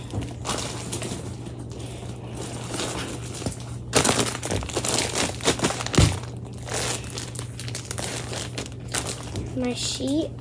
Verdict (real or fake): real